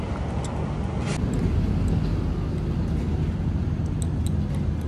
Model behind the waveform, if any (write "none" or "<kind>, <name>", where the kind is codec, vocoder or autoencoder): none